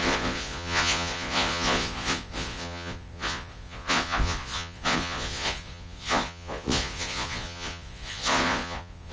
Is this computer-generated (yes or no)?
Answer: yes